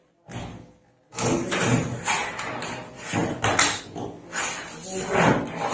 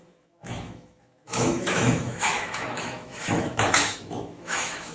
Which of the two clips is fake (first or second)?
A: second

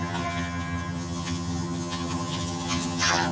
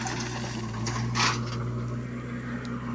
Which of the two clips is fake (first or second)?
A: first